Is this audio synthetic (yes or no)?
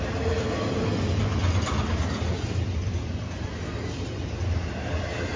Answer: no